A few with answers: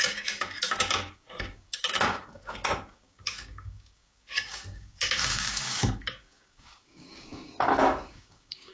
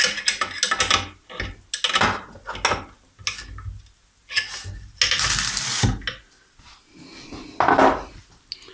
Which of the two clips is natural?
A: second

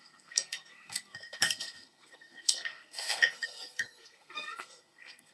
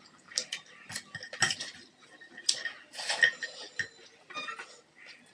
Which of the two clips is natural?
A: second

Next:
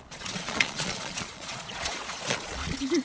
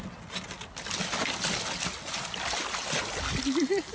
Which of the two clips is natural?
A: second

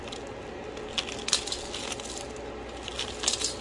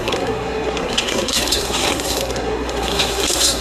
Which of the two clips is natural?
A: first